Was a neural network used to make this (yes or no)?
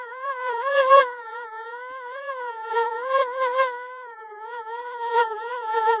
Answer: yes